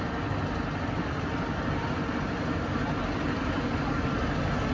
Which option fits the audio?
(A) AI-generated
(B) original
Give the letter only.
B